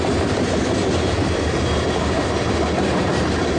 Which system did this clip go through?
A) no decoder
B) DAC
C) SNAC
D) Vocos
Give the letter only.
A